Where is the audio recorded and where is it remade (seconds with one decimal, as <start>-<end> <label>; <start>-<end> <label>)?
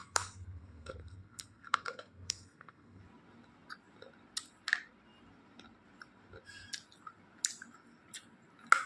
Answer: 0.0-3.0 remade; 3.0-8.9 recorded